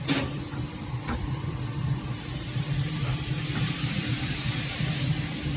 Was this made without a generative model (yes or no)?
no